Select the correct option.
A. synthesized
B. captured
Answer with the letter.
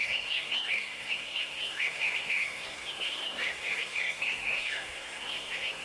A